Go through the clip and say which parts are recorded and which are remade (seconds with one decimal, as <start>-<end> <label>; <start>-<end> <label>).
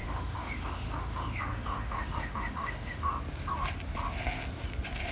0.0-3.1 remade; 3.1-5.1 recorded